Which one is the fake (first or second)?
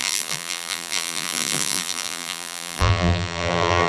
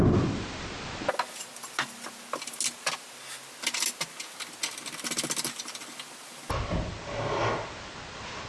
first